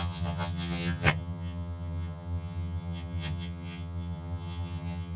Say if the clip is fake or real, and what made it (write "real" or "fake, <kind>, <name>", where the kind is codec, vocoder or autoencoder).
fake, vocoder, HiFi-GAN